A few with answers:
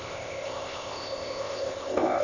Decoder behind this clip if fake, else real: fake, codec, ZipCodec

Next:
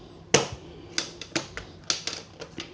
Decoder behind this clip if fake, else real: real